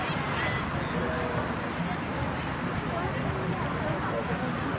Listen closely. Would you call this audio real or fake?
real